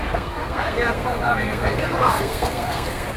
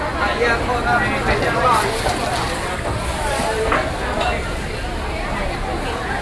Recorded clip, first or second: second